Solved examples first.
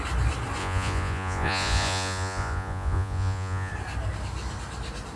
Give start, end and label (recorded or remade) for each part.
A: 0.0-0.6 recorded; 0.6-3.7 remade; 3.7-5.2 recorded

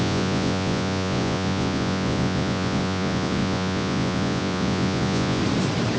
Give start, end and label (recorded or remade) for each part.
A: 0.0-5.4 remade; 5.4-6.0 recorded

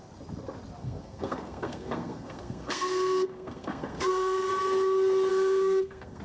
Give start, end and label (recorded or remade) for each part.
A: 0.0-0.8 recorded; 0.8-4.5 remade; 4.5-5.3 recorded; 5.3-6.2 remade